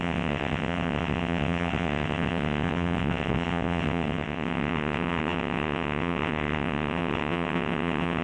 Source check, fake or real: fake